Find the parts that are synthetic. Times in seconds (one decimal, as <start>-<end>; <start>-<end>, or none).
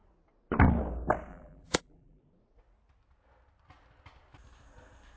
1.3-2.2